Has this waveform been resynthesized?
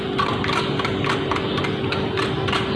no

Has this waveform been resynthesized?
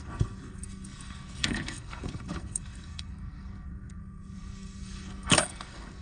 yes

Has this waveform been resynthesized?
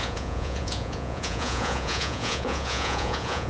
yes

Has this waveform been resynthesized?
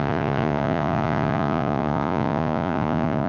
yes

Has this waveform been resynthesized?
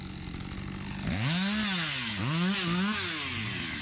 no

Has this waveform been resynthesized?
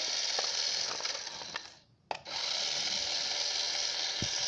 no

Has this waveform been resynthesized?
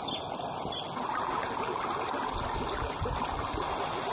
no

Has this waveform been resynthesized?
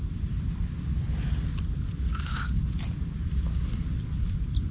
no